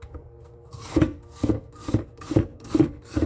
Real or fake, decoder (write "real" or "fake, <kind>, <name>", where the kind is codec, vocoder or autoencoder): fake, codec, SNAC